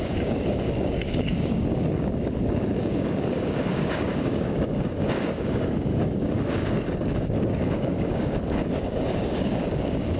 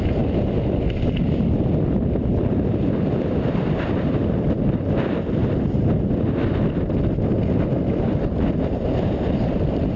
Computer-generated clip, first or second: first